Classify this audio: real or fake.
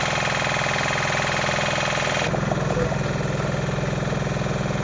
real